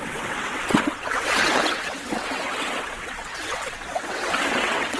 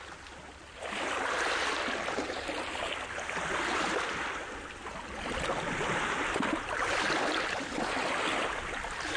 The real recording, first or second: second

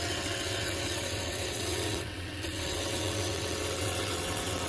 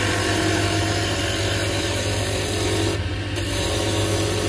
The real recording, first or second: second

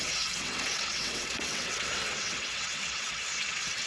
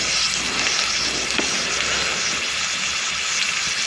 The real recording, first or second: second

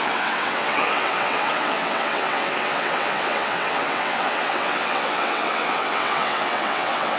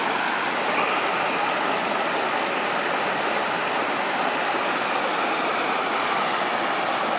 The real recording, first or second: second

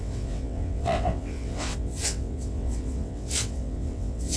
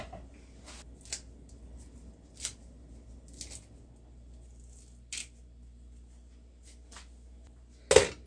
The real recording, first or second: second